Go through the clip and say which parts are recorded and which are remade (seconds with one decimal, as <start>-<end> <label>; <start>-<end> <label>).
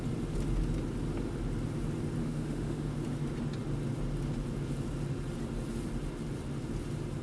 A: 0.0-2.2 recorded; 2.2-2.9 remade; 2.9-7.2 recorded